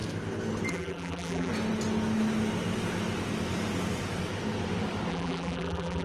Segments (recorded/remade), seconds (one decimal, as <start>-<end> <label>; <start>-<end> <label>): 0.0-0.7 recorded; 0.7-1.5 remade; 1.5-5.1 recorded; 5.1-6.0 remade